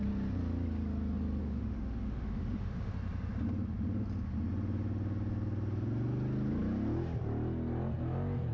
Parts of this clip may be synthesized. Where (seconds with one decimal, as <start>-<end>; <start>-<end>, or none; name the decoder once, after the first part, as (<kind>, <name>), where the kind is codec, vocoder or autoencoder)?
1.4-2.9 (autoencoder, DAC-VAE)